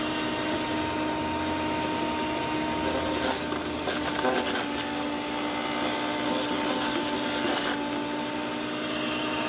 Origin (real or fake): real